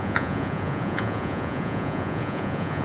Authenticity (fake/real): fake